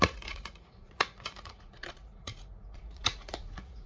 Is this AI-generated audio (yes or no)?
yes